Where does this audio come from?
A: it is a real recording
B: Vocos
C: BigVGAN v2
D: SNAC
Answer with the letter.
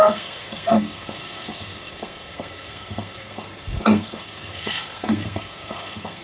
D